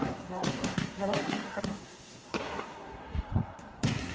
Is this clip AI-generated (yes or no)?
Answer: yes